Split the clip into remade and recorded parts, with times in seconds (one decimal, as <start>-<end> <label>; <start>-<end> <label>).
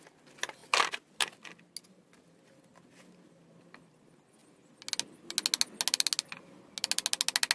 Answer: 0.0-7.5 recorded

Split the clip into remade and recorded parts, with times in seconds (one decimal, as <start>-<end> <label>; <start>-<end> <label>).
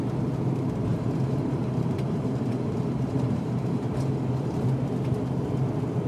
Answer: 0.0-0.9 recorded; 0.9-4.6 remade; 4.6-6.1 recorded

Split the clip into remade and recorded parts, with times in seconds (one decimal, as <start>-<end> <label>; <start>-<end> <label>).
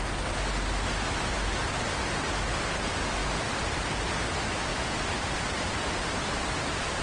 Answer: 0.0-4.7 recorded; 4.7-6.1 remade; 6.1-7.0 recorded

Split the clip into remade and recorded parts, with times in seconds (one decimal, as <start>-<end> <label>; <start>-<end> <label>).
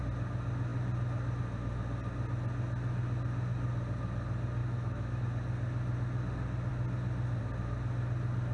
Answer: 0.0-4.6 recorded; 4.6-5.2 remade; 5.2-8.5 recorded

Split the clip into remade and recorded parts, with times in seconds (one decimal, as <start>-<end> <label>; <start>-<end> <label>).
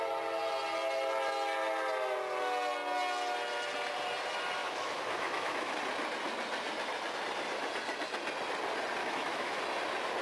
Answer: 0.0-4.6 recorded; 4.6-5.7 remade; 5.7-9.0 recorded; 9.0-9.6 remade; 9.6-10.2 recorded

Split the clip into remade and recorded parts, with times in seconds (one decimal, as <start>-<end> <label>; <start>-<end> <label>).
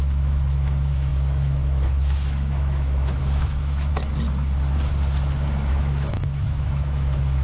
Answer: 0.0-3.9 remade; 3.9-5.7 recorded; 5.7-7.4 remade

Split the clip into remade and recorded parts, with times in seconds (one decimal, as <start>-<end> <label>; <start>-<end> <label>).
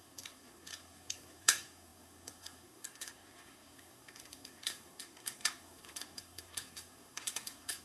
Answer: 0.0-7.8 remade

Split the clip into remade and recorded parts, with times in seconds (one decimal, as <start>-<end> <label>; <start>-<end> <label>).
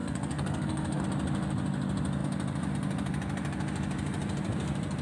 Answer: 0.0-1.0 remade; 1.0-5.0 recorded